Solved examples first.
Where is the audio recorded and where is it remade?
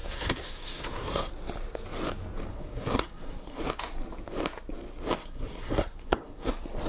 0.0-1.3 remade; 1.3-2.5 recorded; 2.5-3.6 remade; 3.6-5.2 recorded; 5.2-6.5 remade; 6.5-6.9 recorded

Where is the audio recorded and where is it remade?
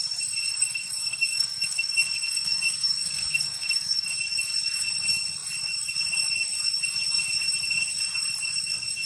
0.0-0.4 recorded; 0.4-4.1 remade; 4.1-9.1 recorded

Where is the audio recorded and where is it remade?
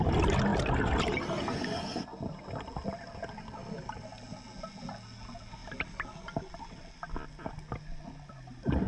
0.0-8.9 recorded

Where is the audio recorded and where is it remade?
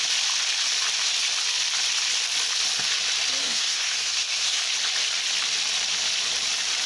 0.0-3.4 recorded; 3.4-4.6 remade; 4.6-6.9 recorded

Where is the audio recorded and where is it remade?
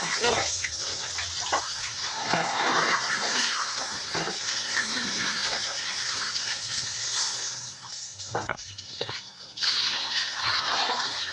0.0-1.1 remade; 1.1-1.6 recorded; 1.6-11.3 remade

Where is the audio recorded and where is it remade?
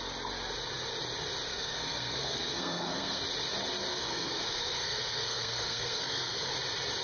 0.0-1.5 recorded; 1.5-3.2 remade; 3.2-3.9 recorded; 3.9-6.5 remade; 6.5-7.0 recorded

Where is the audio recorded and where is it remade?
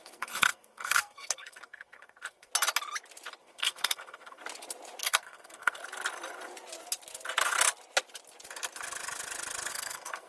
0.0-2.5 remade; 2.5-3.4 recorded; 3.4-4.4 remade; 4.4-5.0 recorded; 5.0-5.8 remade; 5.8-9.7 recorded; 9.7-10.3 remade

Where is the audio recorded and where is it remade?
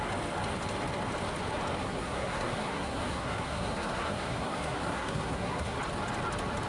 0.0-1.8 recorded; 1.8-5.8 remade; 5.8-6.7 recorded